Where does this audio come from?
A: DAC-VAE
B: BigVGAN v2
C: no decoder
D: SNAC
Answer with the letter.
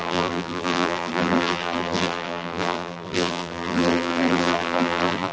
B